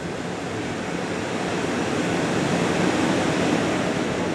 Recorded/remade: recorded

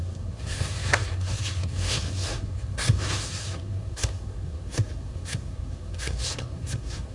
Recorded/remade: remade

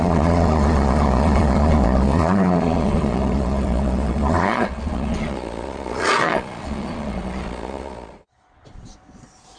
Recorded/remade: remade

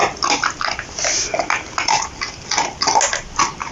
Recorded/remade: recorded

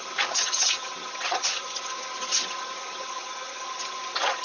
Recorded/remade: remade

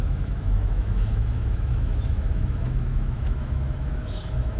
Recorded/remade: remade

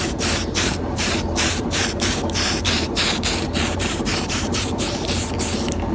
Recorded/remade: remade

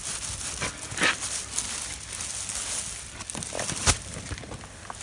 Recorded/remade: recorded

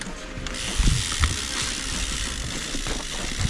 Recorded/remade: recorded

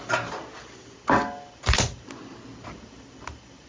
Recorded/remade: recorded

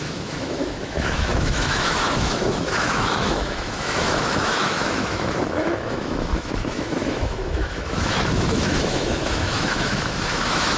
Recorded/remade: remade